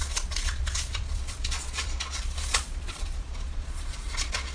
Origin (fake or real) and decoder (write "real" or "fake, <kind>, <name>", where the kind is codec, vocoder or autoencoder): fake, vocoder, Vocos